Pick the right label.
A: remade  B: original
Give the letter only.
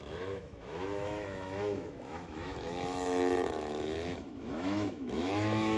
A